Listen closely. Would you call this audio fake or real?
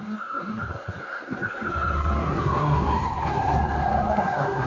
fake